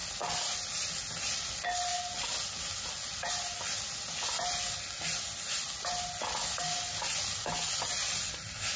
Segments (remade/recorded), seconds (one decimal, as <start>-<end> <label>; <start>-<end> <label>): 0.0-8.8 recorded